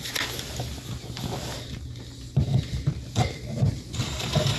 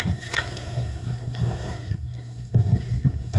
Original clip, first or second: first